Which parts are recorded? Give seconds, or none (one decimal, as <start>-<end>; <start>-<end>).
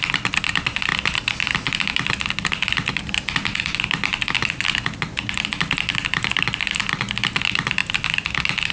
0.0-8.7